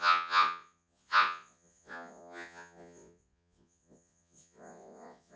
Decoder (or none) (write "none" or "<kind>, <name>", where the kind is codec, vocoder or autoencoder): vocoder, Vocos